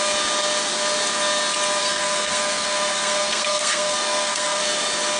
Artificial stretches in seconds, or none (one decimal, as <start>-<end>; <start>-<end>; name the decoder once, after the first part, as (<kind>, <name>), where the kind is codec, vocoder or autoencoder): 1.8-4.6 (codec, SNAC)

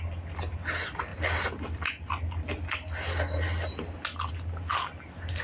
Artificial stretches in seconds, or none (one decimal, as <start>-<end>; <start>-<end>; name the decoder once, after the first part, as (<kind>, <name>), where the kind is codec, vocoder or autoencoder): none

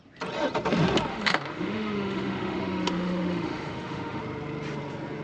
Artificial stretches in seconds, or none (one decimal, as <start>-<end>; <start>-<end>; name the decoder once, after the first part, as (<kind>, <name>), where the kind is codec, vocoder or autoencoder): 1.1-4.2 (autoencoder, DAC-VAE)

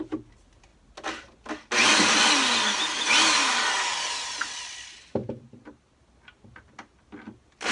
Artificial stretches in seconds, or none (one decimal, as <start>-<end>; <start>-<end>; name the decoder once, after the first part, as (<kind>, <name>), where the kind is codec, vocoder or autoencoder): 5.2-6.0 (vocoder, BigVGAN v2)

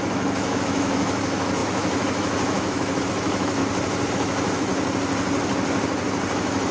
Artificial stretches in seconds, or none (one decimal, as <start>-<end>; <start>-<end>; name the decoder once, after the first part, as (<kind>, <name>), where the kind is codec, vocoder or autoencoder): 0.0-3.6 (autoencoder, DAC-VAE); 4.1-4.7; 6.3-6.7